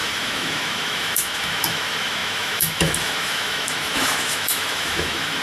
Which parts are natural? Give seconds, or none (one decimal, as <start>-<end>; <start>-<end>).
none